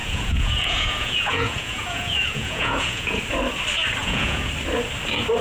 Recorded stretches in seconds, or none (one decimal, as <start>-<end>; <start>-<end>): 3.2-4.0; 4.5-5.4